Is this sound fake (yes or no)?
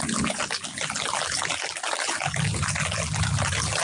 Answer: no